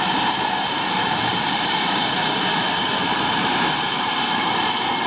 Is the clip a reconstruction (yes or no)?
yes